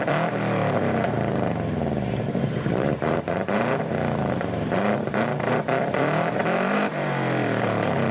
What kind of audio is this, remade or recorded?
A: remade